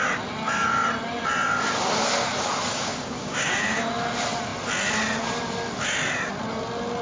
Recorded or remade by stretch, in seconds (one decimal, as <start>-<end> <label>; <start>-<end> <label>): 0.0-2.7 recorded; 2.7-3.8 remade; 3.8-7.0 recorded